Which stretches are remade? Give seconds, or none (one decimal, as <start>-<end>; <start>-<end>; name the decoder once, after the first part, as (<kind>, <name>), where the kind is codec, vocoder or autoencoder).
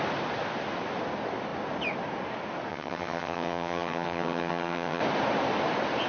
2.7-5.0 (vocoder, HiFi-GAN)